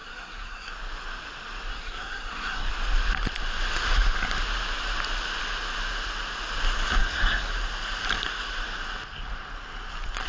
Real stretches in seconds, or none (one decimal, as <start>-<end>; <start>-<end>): 0.7-1.7; 2.7-7.0; 7.5-10.3

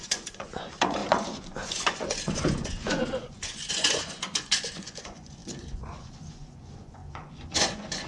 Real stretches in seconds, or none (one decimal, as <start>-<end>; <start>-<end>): none

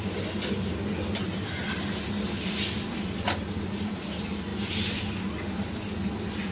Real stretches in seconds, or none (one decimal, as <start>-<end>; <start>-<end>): 0.0-6.5

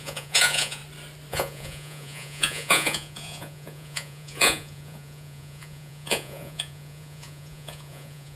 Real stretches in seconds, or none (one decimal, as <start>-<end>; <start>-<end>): 0.8-1.3

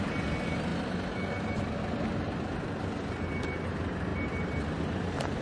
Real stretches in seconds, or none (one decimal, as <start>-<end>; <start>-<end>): 0.0-5.4

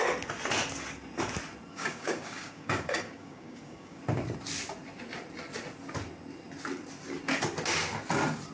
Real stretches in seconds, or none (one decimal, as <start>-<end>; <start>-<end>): 0.0-1.7; 4.0-8.5

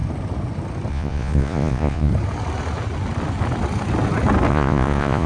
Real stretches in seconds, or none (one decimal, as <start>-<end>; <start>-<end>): 0.0-0.9; 2.1-4.5